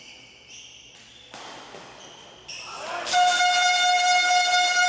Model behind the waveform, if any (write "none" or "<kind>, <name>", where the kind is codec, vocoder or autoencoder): none